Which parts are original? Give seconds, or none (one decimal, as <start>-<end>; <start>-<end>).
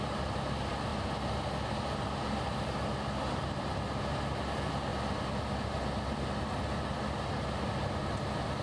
0.0-8.6